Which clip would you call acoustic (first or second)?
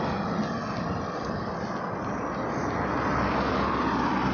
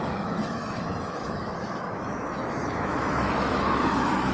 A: first